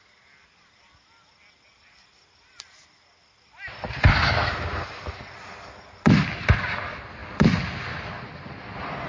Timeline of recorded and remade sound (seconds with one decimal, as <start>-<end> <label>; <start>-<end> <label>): 0.0-9.1 recorded

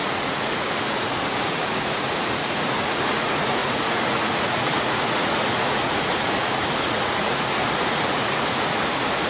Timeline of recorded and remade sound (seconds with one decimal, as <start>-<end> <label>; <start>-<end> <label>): 0.0-9.3 remade

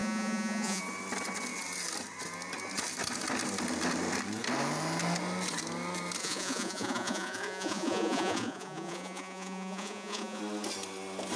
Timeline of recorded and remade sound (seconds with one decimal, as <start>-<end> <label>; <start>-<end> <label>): 0.0-0.8 remade; 0.8-6.2 recorded; 6.2-10.4 remade; 10.4-11.4 recorded

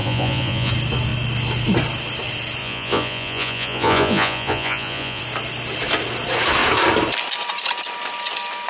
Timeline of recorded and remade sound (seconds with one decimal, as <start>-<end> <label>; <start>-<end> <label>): 0.0-0.7 remade; 0.7-2.6 recorded; 2.6-5.2 remade; 5.2-8.7 recorded